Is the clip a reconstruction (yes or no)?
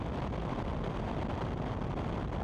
no